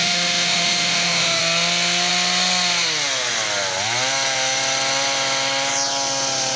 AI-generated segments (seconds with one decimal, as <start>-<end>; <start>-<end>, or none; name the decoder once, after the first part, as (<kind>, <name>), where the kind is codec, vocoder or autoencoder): 0.0-1.4 (autoencoder, DAC-VAE)